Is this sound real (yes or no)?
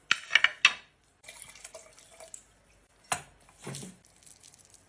yes